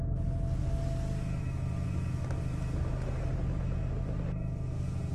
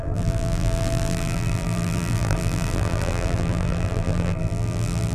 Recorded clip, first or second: first